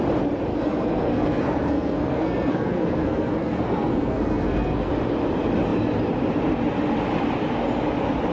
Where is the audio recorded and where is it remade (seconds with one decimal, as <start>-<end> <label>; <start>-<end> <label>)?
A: 0.0-0.5 recorded; 0.5-4.9 remade; 4.9-8.3 recorded